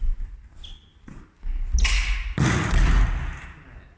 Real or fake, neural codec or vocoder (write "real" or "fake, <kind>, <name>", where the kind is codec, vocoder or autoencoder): real